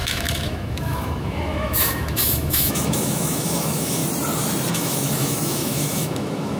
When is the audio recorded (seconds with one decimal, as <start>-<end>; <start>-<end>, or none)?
4.0-4.7